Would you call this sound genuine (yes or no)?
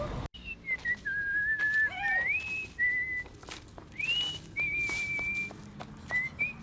yes